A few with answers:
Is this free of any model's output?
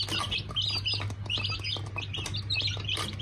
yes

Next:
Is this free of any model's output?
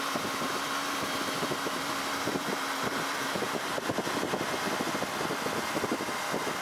no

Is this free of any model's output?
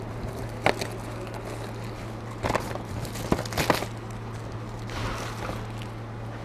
yes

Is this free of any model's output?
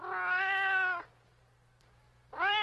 yes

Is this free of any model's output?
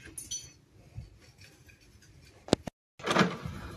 yes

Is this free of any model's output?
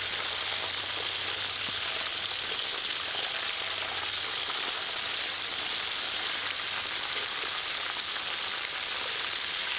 yes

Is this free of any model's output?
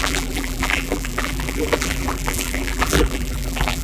no